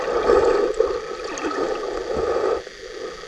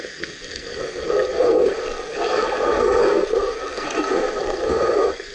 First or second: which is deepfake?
second